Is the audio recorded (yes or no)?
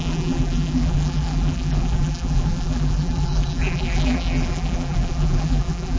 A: no